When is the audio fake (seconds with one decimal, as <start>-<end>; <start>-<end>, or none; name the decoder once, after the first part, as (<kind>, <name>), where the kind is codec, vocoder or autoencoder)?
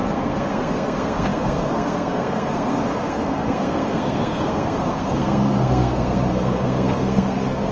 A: 0.0-7.7 (codec, SNAC)